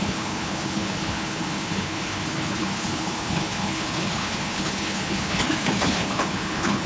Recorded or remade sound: remade